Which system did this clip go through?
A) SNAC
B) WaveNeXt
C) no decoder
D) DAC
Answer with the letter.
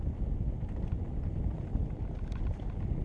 C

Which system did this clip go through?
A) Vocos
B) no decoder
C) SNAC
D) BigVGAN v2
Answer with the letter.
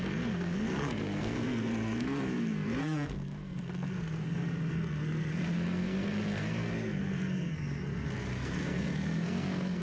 C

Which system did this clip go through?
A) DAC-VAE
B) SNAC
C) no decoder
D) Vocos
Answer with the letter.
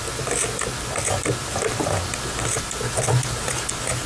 C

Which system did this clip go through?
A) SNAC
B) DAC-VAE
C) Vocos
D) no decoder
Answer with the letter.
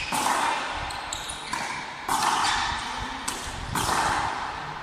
D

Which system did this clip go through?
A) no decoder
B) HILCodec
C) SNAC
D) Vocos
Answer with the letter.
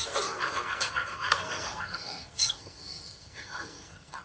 C